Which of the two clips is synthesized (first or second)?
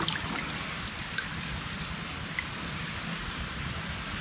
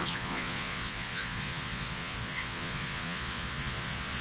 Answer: second